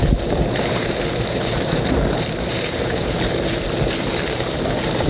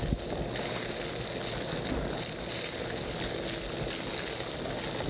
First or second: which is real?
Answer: second